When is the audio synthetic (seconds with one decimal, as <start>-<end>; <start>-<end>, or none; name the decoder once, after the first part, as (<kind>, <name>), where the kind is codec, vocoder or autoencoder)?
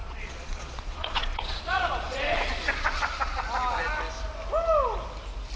0.0-3.4 (vocoder, Vocos)